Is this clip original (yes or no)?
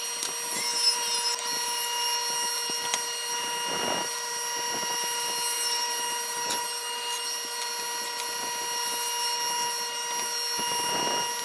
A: yes